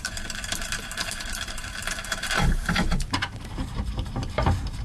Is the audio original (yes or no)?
no